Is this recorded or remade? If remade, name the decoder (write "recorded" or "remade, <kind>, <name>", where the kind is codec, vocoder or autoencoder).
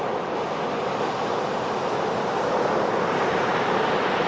recorded